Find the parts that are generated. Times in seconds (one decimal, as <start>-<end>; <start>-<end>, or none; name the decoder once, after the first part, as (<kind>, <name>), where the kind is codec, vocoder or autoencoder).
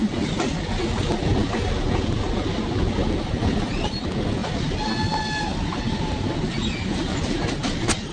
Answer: 0.9-1.3 (vocoder, BigVGAN v2); 3.2-4.4; 7.5-8.1